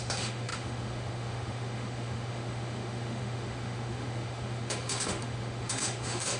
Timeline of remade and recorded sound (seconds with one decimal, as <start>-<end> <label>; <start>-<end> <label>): 0.0-6.4 remade